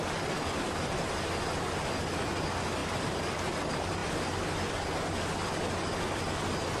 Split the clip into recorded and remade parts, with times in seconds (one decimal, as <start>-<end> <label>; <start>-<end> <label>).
0.0-6.8 recorded